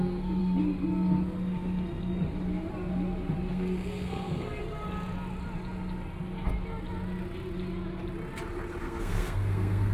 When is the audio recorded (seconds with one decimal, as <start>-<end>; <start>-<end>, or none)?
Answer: 0.4-3.5; 4.6-8.8